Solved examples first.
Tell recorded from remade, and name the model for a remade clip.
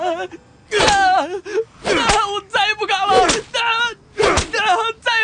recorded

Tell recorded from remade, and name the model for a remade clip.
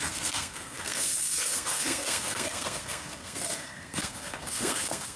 remade, codec, SNAC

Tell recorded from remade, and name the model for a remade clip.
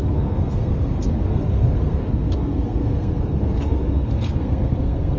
remade, codec, SNAC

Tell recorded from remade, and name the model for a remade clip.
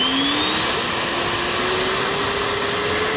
recorded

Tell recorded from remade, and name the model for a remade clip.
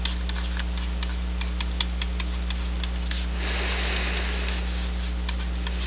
recorded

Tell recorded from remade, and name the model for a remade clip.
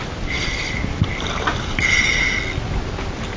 recorded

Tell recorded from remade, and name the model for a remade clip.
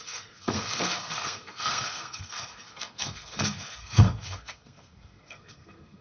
remade, codec, SNAC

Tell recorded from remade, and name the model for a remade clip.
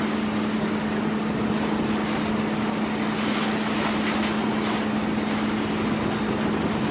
recorded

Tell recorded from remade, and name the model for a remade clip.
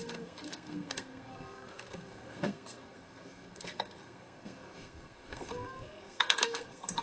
remade, codec, SNAC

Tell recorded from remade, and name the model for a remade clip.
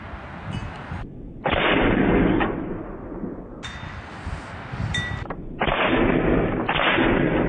recorded